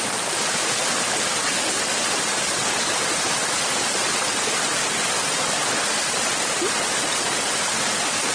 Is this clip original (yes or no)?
yes